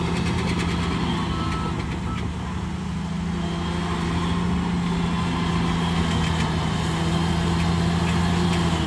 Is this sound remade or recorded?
recorded